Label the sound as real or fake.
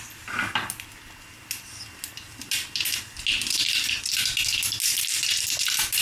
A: real